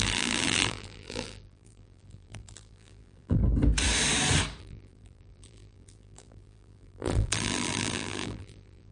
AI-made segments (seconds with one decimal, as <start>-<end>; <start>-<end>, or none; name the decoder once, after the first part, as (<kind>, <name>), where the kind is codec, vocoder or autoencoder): 0.0-3.4 (vocoder, BigVGAN v2); 4.6-8.9